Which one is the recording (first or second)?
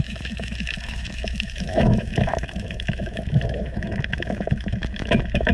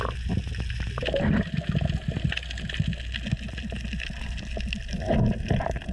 second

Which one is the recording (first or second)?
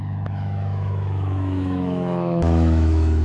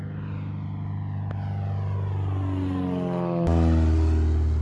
second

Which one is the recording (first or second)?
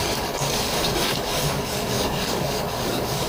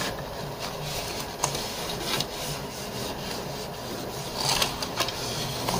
second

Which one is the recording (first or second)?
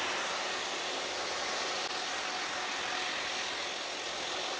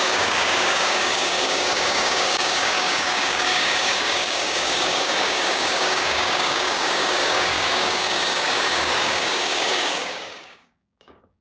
first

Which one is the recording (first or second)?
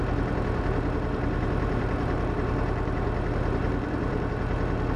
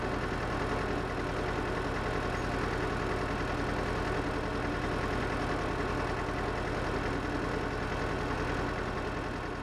second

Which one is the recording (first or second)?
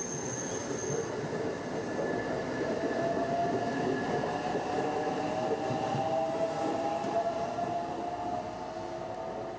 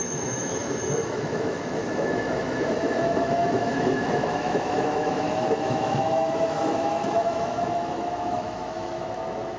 first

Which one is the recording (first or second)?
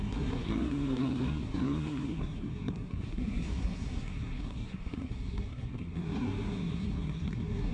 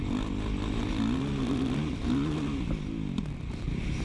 second